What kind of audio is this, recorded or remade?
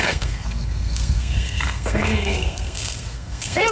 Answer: remade